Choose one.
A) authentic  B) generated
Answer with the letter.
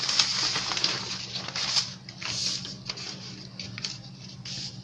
A